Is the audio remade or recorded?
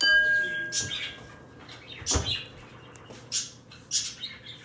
recorded